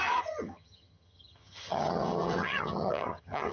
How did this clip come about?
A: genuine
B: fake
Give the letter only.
B